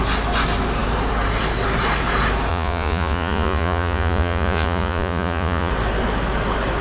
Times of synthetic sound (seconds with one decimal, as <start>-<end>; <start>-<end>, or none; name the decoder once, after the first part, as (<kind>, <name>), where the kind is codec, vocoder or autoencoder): 2.5-5.7 (vocoder, Vocos)